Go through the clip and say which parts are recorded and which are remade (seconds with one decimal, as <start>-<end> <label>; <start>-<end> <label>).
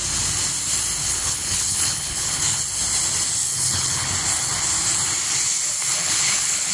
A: 0.0-1.0 recorded; 1.0-2.6 remade; 2.6-3.4 recorded; 3.4-4.1 remade; 4.1-5.9 recorded; 5.9-6.7 remade